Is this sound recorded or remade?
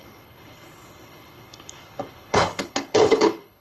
remade